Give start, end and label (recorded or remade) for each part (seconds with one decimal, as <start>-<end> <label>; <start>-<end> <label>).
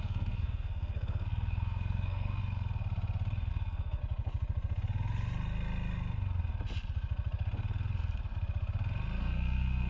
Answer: 0.0-2.4 remade; 2.4-3.5 recorded; 3.5-4.0 remade; 4.0-9.2 recorded; 9.2-9.9 remade